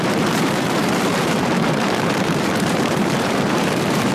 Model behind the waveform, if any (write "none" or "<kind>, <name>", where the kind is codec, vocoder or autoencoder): vocoder, BigVGAN v2